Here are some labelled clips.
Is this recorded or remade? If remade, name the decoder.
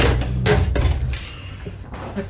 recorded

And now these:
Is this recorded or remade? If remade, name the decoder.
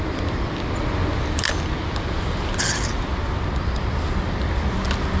recorded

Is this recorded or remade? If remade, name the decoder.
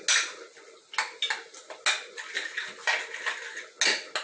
recorded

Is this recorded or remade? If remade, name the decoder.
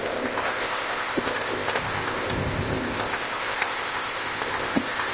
remade, codec, ZipCodec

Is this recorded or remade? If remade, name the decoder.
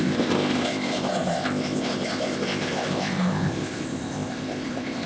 remade, codec, ZipCodec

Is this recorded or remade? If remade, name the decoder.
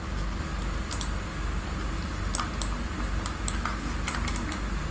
recorded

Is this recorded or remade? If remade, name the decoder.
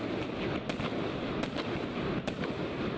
recorded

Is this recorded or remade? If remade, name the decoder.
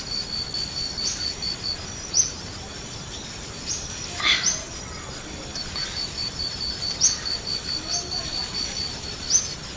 recorded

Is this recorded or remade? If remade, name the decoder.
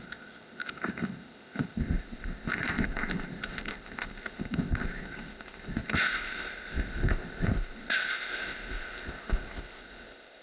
remade, codec, ZipCodec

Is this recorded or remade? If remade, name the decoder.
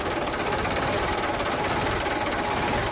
recorded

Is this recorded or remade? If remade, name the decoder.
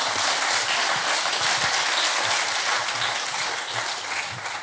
recorded